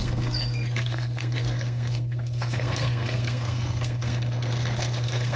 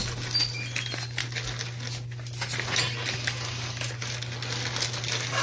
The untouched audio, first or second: second